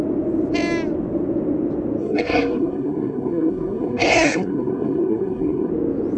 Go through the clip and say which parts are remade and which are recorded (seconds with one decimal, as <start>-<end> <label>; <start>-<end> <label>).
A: 0.0-2.0 recorded; 2.0-5.7 remade; 5.7-6.2 recorded

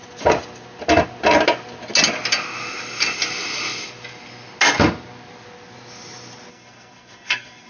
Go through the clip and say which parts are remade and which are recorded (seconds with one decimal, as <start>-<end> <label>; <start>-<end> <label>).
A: 0.0-6.5 recorded; 6.5-7.7 remade

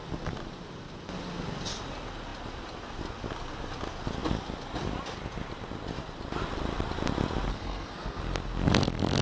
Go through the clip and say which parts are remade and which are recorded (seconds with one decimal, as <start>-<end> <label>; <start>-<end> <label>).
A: 0.0-7.5 recorded; 7.5-8.2 remade; 8.2-9.2 recorded